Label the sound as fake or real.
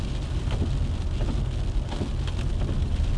real